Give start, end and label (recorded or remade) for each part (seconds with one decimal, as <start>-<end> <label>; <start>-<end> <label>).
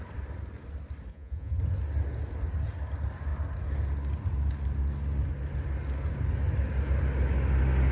0.0-1.1 recorded; 1.1-1.6 remade; 1.6-7.9 recorded